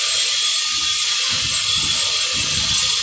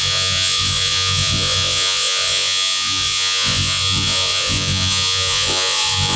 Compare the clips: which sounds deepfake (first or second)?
second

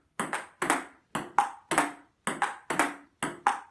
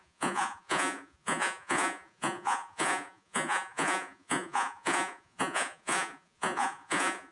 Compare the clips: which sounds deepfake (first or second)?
second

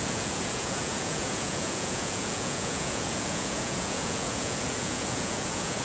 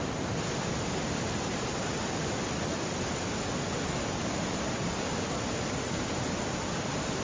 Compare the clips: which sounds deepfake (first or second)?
first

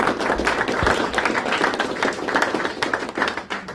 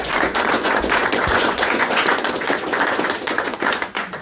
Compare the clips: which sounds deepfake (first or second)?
second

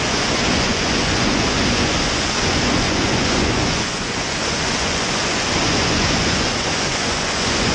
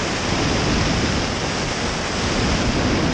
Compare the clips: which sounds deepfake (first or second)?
first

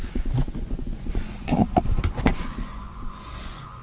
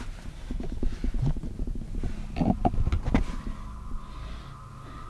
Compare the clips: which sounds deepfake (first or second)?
first